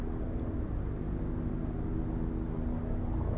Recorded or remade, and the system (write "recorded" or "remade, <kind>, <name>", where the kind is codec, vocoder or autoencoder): recorded